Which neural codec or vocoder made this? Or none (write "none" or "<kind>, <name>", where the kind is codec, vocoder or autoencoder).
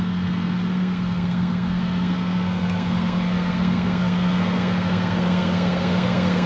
codec, SNAC